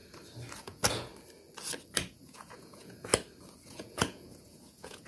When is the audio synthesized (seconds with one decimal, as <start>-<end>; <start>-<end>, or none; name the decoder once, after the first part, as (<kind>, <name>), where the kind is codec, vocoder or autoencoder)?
0.6-1.1 (vocoder, Vocos); 2.1-3.1; 3.7-5.1